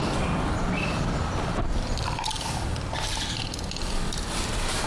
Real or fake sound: fake